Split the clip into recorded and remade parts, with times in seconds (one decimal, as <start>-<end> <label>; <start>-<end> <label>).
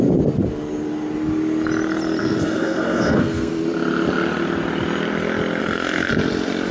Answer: 0.0-2.2 recorded; 2.2-3.5 remade; 3.5-5.6 recorded; 5.6-6.1 remade; 6.1-6.7 recorded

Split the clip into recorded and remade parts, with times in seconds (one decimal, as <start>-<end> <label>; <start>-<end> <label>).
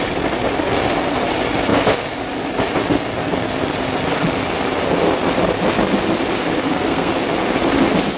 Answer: 0.0-6.6 recorded; 6.6-7.1 remade; 7.1-8.2 recorded